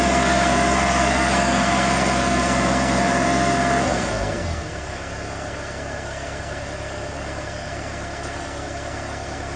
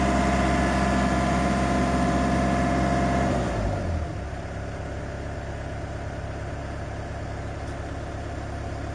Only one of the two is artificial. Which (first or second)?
first